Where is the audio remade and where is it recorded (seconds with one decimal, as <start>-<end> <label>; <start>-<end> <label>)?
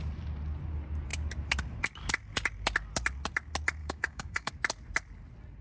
0.0-3.8 recorded; 3.8-4.5 remade; 4.5-5.6 recorded